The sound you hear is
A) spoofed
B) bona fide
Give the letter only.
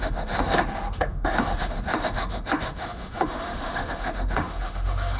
A